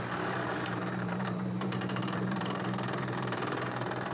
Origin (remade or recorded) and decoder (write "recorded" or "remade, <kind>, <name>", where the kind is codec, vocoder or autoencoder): remade, vocoder, BigVGAN v2